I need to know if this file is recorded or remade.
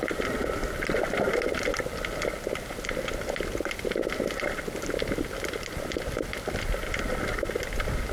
recorded